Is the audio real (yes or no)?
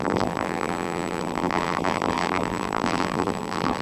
no